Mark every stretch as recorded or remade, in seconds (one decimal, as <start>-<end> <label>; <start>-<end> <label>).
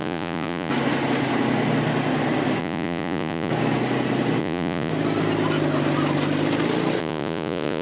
0.0-0.7 remade; 0.7-2.6 recorded; 2.6-3.5 remade; 3.5-4.4 recorded; 4.4-4.9 remade; 4.9-7.0 recorded; 7.0-7.8 remade